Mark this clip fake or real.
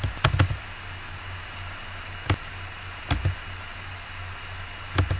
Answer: real